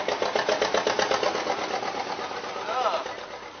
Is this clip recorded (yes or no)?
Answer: yes